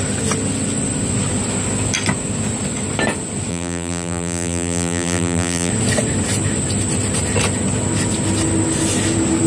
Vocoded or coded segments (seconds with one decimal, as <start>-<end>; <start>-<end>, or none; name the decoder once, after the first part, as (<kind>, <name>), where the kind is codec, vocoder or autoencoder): 3.5-5.7 (vocoder, BigVGAN v2)